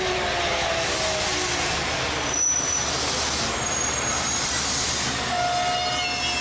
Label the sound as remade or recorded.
recorded